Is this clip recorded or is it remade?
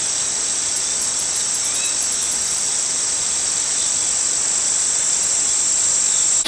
recorded